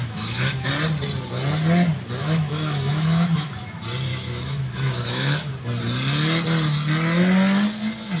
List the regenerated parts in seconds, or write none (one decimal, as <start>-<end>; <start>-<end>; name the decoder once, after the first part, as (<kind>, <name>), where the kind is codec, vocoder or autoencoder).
0.0-0.7 (autoencoder, DAC-VAE); 2.2-3.5; 4.1-5.5